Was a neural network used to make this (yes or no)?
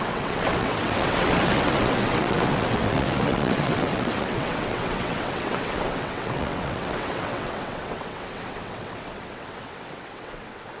yes